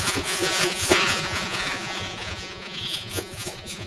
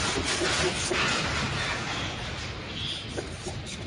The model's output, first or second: first